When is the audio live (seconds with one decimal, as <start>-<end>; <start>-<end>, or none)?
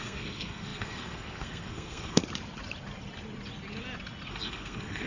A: 2.2-4.3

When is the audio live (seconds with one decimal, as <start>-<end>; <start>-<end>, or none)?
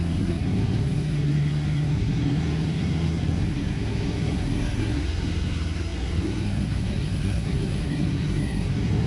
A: none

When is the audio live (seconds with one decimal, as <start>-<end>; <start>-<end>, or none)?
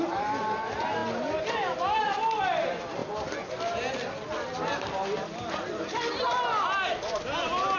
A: 0.0-7.8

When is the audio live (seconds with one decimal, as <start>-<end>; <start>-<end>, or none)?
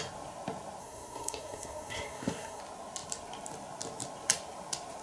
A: 0.0-0.8; 2.6-5.0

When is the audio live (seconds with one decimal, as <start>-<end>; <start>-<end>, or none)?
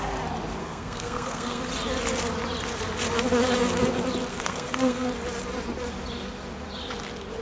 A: 0.0-0.6; 1.6-4.3; 5.1-7.4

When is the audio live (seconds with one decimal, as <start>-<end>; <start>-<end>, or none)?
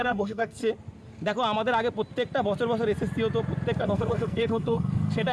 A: 0.6-3.8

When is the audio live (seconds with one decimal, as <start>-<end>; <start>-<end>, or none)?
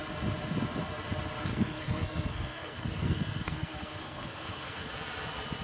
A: 0.0-1.5; 4.9-5.6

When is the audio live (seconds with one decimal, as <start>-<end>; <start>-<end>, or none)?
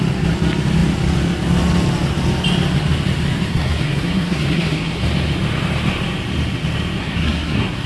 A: 0.0-3.5; 5.0-7.0